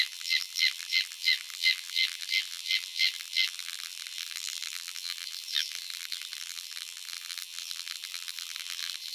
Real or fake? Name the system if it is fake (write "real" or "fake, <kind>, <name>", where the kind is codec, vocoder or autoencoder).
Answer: fake, vocoder, BigVGAN v2